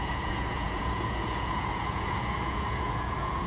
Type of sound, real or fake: fake